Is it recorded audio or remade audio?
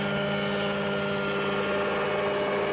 recorded